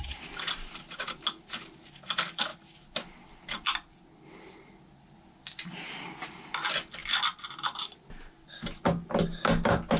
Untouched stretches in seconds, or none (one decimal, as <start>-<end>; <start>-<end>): 0.0-10.0